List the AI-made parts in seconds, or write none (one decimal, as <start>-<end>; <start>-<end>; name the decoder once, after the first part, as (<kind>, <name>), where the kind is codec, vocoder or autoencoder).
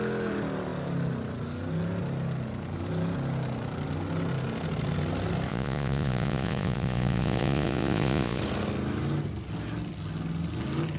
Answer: 5.5-8.4 (vocoder, Vocos)